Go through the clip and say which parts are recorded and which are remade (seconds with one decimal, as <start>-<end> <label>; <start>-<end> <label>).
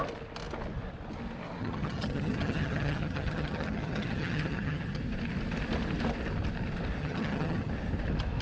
0.0-1.6 recorded; 1.6-5.0 remade; 5.0-7.0 recorded; 7.0-7.7 remade; 7.7-8.4 recorded